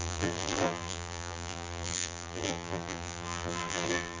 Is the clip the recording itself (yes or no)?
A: no